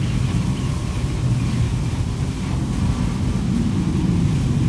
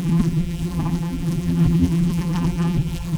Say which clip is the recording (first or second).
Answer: first